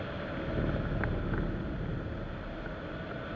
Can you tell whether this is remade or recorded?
recorded